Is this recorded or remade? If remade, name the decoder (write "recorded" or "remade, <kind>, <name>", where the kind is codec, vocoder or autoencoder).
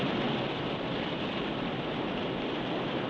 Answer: remade, vocoder, BigVGAN v2